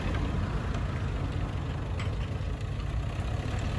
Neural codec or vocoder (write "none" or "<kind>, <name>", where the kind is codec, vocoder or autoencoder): none